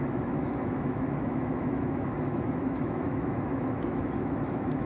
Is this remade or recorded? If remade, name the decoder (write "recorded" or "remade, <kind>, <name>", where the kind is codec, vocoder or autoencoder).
remade, autoencoder, DAC-VAE